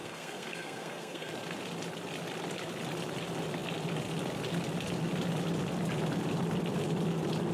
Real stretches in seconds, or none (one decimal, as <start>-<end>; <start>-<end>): 1.3-7.5